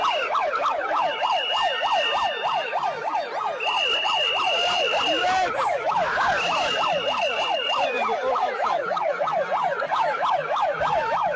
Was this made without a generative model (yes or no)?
no